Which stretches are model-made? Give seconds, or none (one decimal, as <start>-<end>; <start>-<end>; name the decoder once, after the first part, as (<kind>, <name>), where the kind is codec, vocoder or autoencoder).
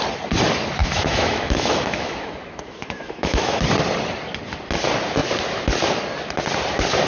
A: 0.8-3.6 (autoencoder, DAC-VAE)